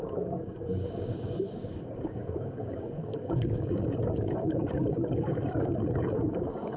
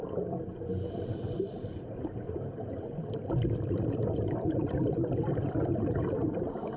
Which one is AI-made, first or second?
first